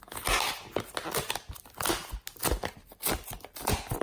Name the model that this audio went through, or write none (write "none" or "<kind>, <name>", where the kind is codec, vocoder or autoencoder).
none